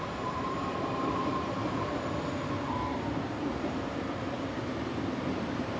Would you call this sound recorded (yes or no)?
no